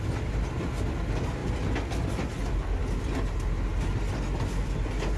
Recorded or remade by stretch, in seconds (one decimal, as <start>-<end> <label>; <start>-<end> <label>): 0.0-5.2 recorded